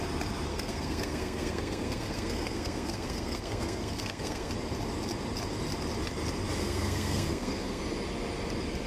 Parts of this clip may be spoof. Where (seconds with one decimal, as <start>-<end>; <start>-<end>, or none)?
0.5-4.5; 6.6-7.8